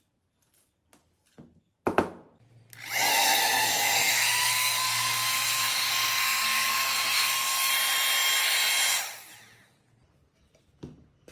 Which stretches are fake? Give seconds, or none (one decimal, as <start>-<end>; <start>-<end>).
3.1-7.7